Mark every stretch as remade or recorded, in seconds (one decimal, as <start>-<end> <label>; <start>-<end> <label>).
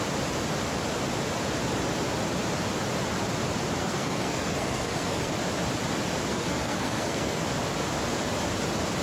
0.0-3.8 recorded; 3.8-5.3 remade; 5.3-6.3 recorded; 6.3-7.4 remade; 7.4-9.0 recorded